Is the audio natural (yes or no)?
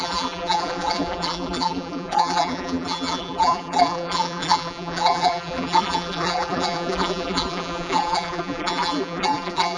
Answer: no